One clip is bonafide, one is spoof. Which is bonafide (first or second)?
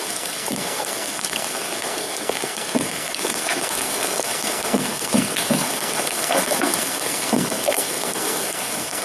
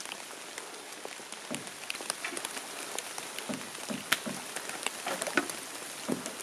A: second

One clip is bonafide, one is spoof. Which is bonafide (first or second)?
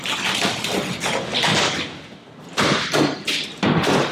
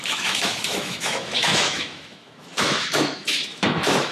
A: first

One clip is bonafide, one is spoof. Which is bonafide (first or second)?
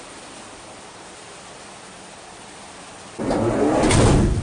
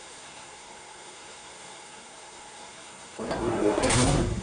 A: first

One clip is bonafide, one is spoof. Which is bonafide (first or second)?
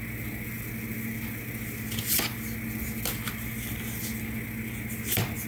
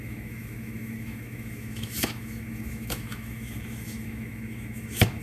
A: first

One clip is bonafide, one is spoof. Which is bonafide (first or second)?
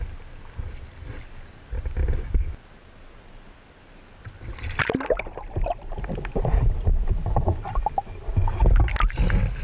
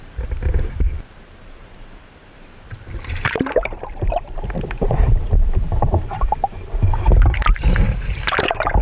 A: first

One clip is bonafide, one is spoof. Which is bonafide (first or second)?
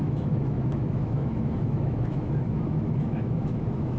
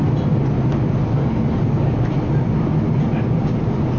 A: second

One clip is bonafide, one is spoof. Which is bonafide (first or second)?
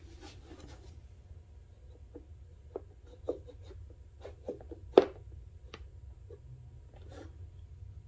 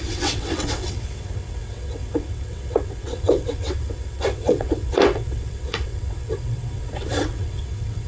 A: first